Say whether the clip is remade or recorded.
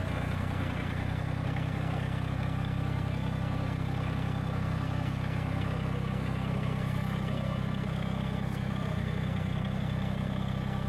remade